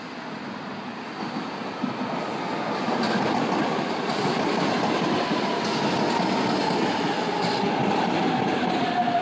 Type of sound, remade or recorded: recorded